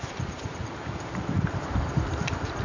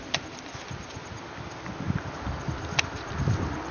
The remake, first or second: first